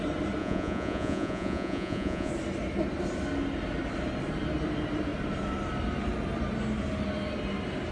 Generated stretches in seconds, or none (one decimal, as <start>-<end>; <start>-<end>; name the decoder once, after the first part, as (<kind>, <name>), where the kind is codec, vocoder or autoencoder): 0.4-2.3 (vocoder, Vocos)